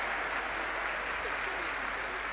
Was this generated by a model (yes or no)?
no